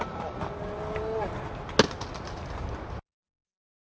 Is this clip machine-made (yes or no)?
no